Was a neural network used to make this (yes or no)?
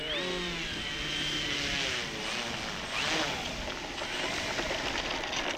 no